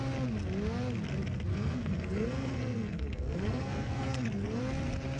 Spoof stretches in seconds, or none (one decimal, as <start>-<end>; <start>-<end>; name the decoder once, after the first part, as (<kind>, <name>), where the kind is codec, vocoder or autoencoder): 1.5-4.6 (codec, SNAC)